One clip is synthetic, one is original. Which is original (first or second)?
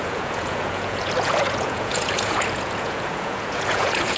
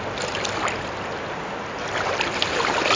second